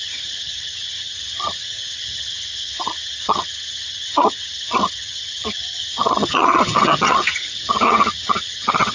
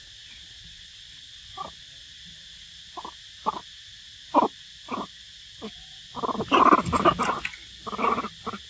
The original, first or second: second